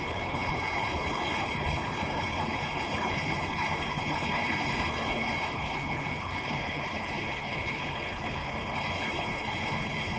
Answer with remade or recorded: remade